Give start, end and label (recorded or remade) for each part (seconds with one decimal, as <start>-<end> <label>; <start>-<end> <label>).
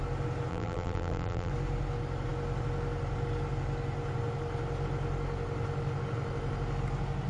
0.0-0.5 recorded; 0.5-1.5 remade; 1.5-7.3 recorded